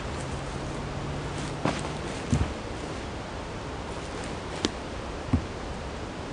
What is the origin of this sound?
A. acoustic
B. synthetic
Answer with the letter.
A